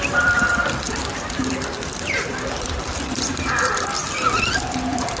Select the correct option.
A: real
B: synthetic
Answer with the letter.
B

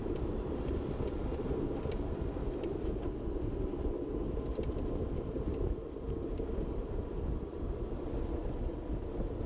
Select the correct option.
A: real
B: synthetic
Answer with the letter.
A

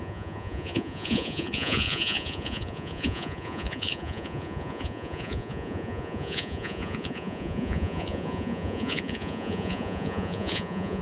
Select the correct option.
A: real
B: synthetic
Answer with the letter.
B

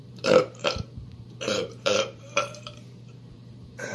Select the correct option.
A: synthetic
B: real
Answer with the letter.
A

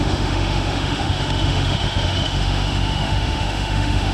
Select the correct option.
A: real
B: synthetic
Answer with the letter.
B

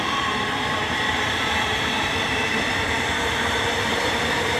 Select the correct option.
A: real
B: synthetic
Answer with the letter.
B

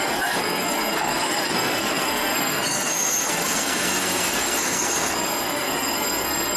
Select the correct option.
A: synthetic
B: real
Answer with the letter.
A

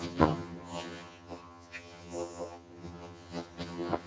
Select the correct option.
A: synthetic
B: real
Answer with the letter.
A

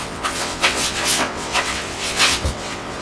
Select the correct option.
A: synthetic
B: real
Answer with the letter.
A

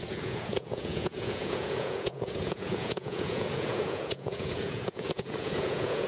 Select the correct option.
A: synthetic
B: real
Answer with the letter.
A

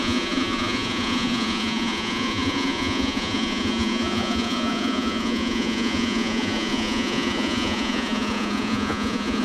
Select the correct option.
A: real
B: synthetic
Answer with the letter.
B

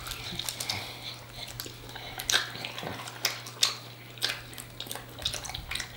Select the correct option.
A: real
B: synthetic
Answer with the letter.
A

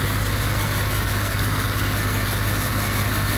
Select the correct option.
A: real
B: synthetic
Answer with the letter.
B